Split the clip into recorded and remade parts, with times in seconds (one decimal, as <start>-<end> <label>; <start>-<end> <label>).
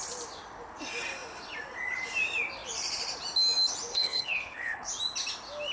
0.0-3.9 recorded; 3.9-4.9 remade; 4.9-5.7 recorded